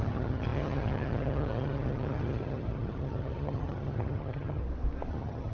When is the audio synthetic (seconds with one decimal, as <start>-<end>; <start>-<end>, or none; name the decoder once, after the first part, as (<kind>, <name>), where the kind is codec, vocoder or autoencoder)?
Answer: 0.0-4.6 (vocoder, HiFi-GAN); 5.1-5.5